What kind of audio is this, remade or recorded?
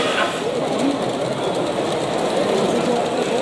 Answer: recorded